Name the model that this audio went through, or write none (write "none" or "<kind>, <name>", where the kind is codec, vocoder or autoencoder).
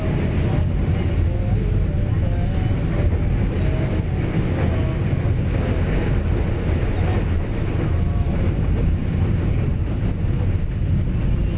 none